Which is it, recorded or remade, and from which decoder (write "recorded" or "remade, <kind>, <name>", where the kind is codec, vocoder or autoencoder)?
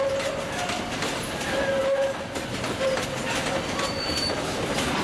recorded